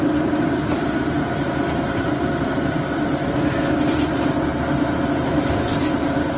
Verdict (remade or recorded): remade